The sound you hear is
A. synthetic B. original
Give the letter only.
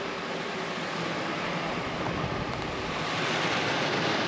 B